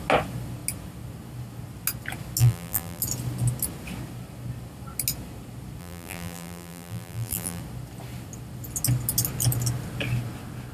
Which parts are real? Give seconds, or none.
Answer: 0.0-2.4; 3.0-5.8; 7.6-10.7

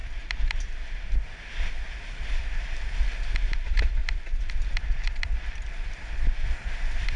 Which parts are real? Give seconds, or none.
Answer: 0.0-7.2

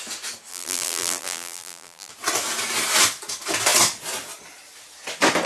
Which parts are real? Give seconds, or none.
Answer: 0.0-0.5; 2.1-5.5

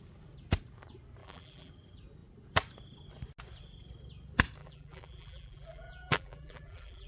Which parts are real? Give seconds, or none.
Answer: 0.0-1.2; 1.7-4.6

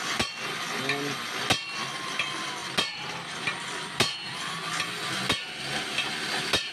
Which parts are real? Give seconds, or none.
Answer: 0.0-6.7

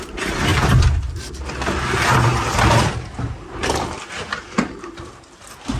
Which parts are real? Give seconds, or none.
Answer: 0.0-0.5; 1.3-5.8

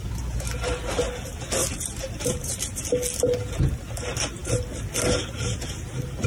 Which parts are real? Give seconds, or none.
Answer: 0.0-1.6; 2.8-6.3

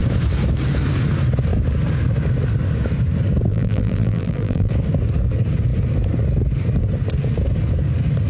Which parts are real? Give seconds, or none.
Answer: 0.0-3.5; 4.7-8.3